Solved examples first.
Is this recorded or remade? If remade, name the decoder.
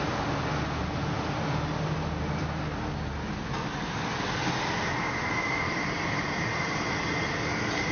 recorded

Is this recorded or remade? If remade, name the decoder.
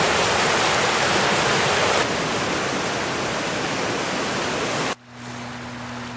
recorded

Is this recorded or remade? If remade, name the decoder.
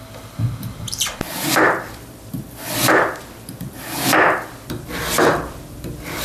remade, vocoder, BigVGAN v2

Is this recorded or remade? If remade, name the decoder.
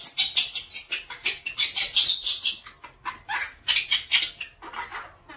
recorded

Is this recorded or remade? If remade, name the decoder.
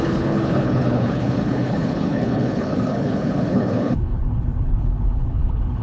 remade, codec, HILCodec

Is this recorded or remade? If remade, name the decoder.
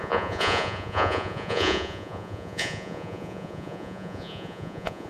remade, vocoder, Vocos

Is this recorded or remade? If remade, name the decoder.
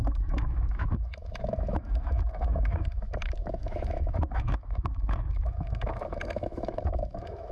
remade, autoencoder, DAC-VAE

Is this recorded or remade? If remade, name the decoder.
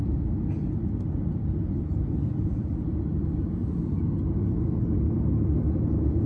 recorded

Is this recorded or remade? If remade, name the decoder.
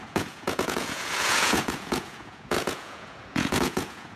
remade, vocoder, Vocos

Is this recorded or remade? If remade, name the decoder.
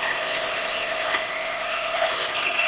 remade, codec, ZipCodec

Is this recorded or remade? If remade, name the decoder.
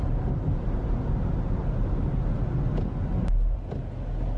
recorded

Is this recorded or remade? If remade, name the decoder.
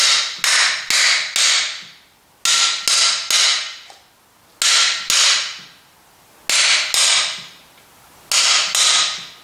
recorded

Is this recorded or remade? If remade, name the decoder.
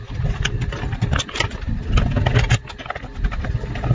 recorded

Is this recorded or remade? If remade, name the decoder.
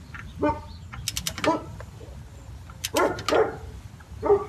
recorded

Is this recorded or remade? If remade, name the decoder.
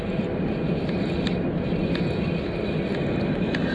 recorded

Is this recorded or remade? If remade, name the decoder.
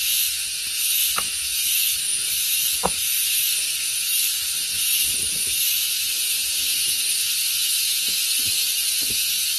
remade, autoencoder, DAC-VAE